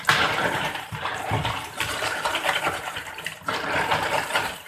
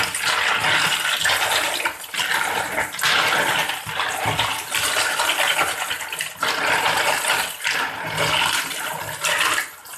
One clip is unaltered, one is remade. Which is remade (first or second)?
first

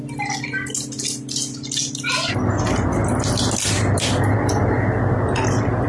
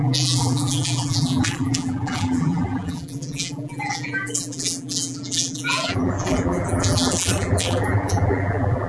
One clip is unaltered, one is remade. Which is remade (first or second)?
second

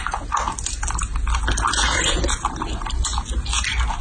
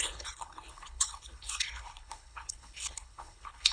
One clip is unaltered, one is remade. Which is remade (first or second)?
second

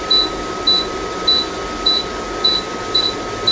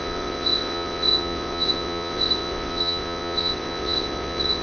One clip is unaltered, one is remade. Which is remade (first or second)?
second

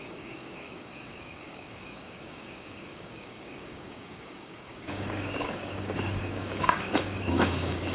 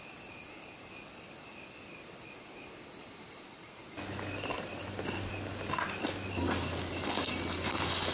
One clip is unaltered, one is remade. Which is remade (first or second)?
first